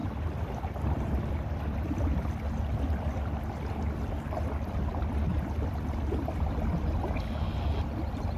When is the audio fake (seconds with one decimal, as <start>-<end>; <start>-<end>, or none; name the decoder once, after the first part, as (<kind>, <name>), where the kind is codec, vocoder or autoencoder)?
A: 0.0-2.2 (vocoder, BigVGAN v2)